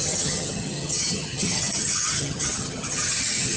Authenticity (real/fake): fake